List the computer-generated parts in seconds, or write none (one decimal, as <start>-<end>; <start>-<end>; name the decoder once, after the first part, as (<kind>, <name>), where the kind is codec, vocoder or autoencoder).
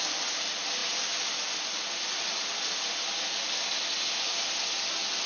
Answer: none